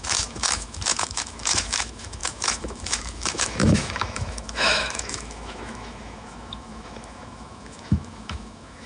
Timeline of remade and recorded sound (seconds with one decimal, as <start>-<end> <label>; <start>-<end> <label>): 0.0-8.9 remade